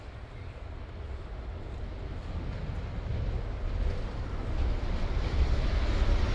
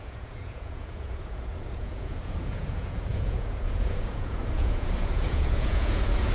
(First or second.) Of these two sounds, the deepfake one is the second